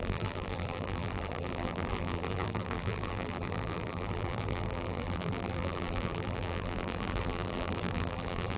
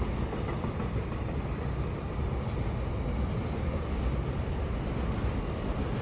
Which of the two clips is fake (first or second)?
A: first